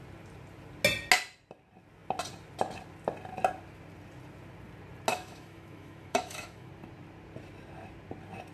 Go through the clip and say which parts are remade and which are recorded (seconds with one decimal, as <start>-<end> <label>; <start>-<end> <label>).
0.0-5.1 recorded; 5.1-6.7 remade; 6.7-8.5 recorded